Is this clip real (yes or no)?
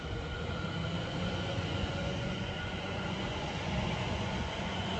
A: no